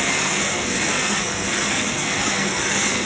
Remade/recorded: remade